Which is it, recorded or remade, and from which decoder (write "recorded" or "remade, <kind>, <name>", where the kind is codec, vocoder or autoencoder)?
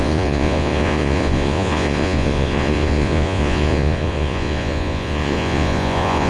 remade, vocoder, Vocos